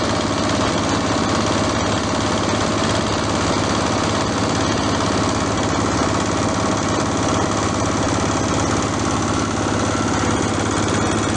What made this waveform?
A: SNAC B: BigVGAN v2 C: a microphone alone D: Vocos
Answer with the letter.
C